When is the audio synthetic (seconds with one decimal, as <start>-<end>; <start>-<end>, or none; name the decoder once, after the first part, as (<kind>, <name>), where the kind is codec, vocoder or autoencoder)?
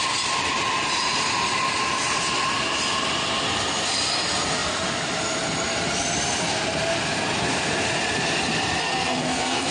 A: 8.8-9.7 (codec, SNAC)